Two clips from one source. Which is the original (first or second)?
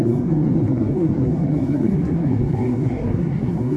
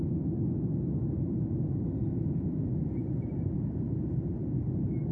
second